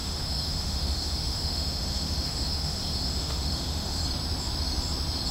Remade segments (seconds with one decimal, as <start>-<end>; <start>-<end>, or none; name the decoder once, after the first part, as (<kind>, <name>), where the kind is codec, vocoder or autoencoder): 0.0-4.0 (autoencoder, DAC-VAE)